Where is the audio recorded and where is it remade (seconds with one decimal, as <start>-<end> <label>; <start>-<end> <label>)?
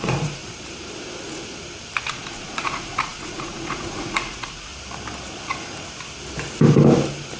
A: 0.0-0.4 remade; 0.4-2.1 recorded; 2.1-4.7 remade; 4.7-7.4 recorded